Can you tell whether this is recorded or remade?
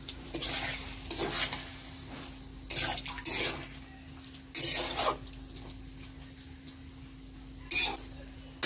recorded